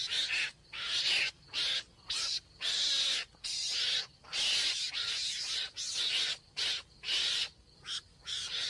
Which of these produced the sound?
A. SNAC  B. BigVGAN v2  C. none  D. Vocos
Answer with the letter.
C